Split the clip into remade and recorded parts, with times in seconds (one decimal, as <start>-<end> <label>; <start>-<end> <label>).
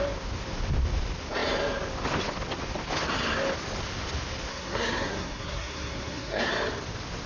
0.0-4.5 recorded; 4.5-6.5 remade; 6.5-7.3 recorded